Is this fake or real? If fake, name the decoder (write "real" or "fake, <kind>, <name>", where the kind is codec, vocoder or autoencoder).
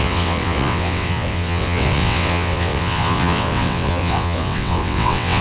fake, vocoder, WaveNeXt